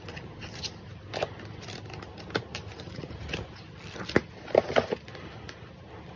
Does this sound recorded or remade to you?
recorded